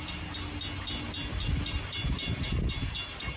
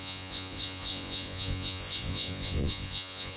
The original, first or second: first